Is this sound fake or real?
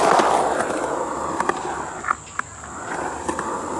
real